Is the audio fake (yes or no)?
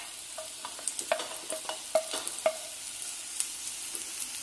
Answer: no